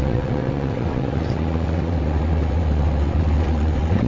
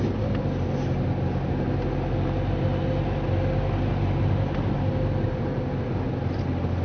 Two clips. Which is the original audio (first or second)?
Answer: second